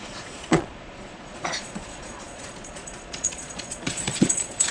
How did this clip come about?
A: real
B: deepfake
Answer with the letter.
B